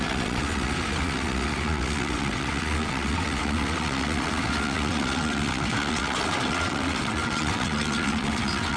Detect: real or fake fake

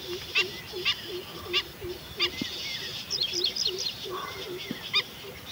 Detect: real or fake real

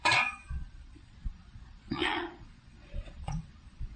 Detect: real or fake fake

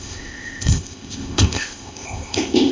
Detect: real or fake fake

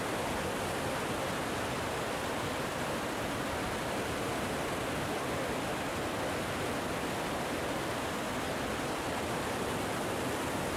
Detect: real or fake real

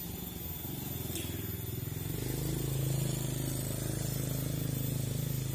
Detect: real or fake real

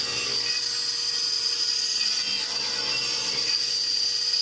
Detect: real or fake real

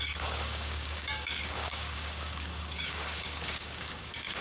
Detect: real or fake fake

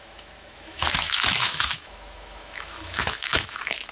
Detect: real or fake fake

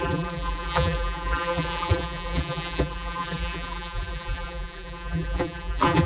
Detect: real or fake fake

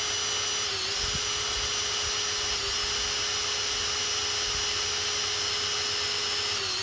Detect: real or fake real